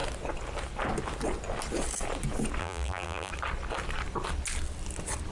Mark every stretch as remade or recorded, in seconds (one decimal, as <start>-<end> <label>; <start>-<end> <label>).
0.0-2.6 recorded; 2.6-3.3 remade; 3.3-5.3 recorded